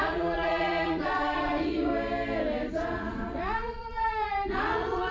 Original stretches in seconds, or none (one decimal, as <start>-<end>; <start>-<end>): 1.9-2.7